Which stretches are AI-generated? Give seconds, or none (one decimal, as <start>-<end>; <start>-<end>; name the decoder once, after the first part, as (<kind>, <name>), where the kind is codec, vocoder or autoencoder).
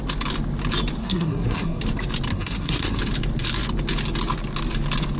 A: 1.0-1.8 (codec, SNAC); 2.3-3.0